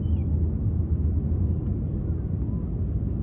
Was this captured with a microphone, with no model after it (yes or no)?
yes